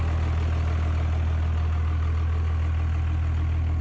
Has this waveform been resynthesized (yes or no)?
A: no